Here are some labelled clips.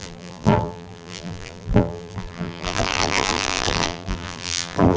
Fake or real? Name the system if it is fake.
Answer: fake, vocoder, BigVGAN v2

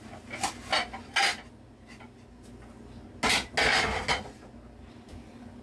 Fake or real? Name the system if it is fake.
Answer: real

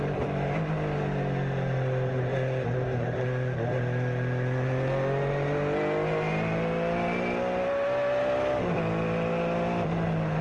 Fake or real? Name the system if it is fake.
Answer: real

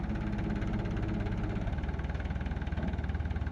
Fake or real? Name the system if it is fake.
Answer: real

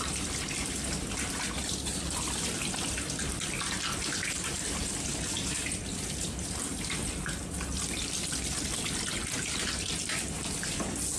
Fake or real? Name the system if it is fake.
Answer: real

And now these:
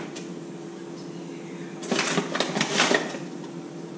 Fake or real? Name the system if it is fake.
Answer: real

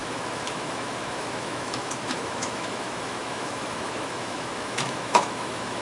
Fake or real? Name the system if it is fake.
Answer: fake, autoencoder, DAC-VAE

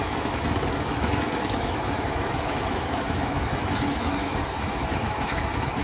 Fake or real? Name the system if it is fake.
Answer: fake, autoencoder, DAC-VAE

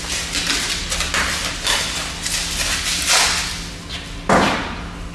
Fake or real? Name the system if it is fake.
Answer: real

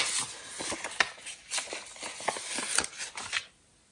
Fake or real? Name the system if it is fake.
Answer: real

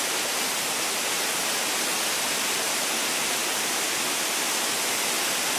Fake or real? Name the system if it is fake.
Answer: real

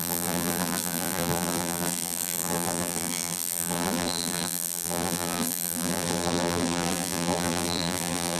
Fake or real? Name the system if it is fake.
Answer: fake, vocoder, BigVGAN v2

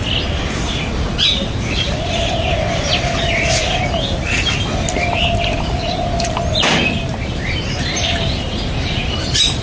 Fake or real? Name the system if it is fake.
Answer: real